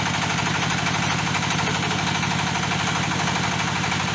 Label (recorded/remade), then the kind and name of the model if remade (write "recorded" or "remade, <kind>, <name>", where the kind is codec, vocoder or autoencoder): recorded